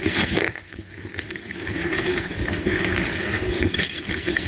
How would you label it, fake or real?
fake